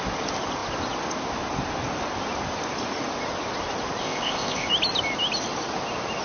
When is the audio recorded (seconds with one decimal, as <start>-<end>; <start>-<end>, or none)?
0.0-4.0; 4.7-6.2